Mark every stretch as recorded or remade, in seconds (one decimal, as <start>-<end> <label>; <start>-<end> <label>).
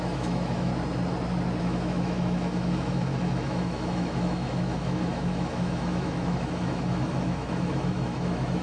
0.0-0.7 remade; 0.7-1.6 recorded; 1.6-8.6 remade